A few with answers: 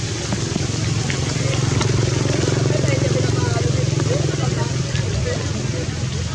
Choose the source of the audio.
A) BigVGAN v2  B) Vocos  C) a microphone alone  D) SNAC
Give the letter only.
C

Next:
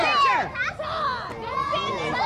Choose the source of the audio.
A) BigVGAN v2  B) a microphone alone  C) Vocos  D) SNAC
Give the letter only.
B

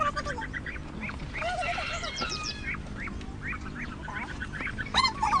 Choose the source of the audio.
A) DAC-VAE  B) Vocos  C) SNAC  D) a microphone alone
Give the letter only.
D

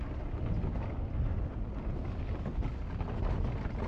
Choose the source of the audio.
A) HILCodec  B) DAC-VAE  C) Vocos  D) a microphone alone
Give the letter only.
D